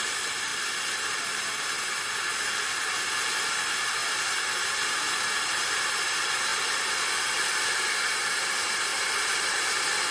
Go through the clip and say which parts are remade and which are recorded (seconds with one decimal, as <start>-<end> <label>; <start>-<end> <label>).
0.0-4.0 recorded; 4.0-6.0 remade; 6.0-8.9 recorded; 8.9-9.6 remade; 9.6-10.1 recorded